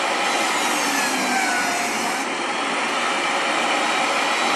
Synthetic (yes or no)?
no